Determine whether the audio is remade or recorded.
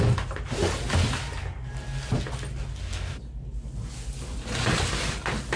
recorded